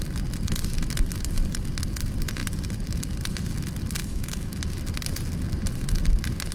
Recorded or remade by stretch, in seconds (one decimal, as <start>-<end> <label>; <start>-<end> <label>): 0.0-4.0 recorded; 4.0-4.6 remade; 4.6-6.5 recorded